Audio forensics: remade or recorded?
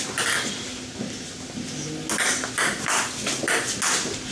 recorded